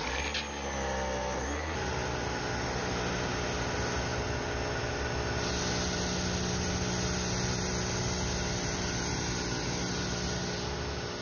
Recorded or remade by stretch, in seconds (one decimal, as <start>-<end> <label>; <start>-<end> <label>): 0.0-11.2 recorded